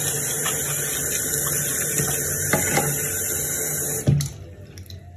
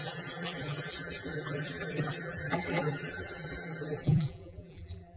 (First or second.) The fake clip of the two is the second